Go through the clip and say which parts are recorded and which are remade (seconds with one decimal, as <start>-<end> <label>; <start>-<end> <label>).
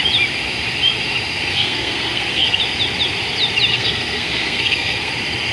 0.0-1.5 recorded; 1.5-2.6 remade; 2.6-3.7 recorded; 3.7-5.1 remade; 5.1-5.5 recorded